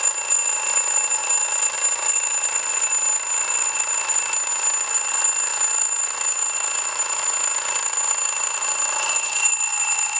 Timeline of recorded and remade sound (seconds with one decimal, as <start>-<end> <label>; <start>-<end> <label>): 0.0-10.2 recorded